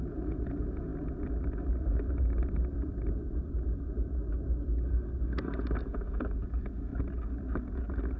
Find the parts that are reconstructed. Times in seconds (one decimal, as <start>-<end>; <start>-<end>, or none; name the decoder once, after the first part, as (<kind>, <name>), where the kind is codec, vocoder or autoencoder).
0.0-0.9 (vocoder, Vocos); 5.8-6.9